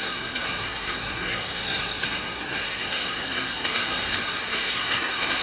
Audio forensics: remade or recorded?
remade